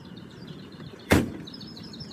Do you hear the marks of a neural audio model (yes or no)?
yes